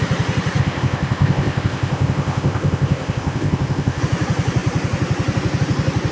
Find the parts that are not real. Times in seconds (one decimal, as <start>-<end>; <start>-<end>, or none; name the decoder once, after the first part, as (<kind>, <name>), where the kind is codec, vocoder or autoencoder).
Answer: 0.6-4.0 (codec, ZipCodec)